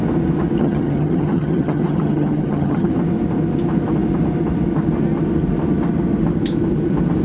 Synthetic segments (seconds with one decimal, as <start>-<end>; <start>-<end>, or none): 0.6-2.9